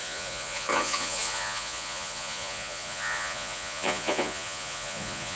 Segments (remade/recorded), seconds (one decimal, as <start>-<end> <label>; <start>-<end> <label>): 0.0-5.4 remade